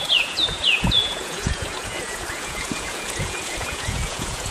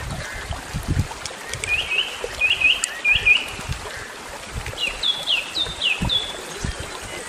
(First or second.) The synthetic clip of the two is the first